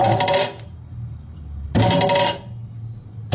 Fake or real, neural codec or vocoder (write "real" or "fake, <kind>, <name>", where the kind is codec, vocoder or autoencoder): real